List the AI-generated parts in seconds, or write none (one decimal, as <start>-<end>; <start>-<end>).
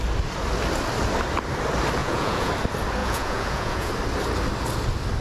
2.0-2.5; 3.0-3.9